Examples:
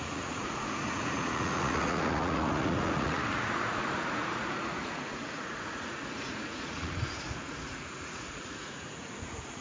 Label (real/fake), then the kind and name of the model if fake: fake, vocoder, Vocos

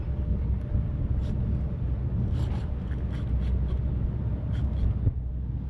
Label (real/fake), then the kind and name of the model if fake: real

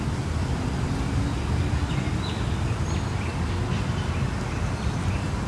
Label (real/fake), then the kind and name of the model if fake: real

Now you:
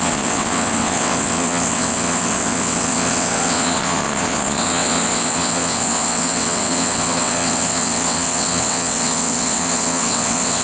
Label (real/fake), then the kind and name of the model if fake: fake, vocoder, WaveNeXt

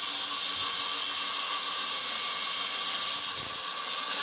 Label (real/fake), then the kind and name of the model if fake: real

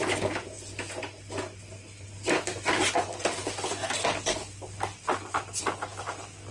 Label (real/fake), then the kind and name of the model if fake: real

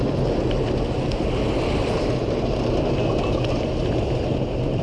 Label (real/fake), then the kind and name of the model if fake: real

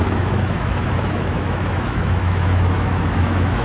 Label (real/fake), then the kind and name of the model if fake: fake, autoencoder, DAC-VAE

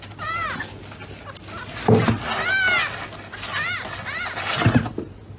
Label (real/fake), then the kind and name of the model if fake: real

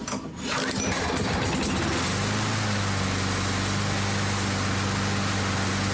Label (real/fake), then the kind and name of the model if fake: real